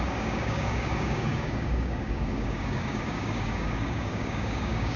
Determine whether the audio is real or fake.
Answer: fake